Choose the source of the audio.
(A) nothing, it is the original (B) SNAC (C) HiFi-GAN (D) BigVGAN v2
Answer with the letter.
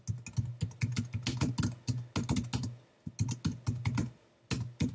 A